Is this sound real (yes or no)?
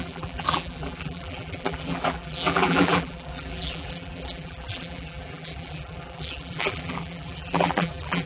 no